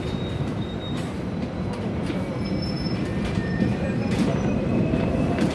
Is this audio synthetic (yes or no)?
yes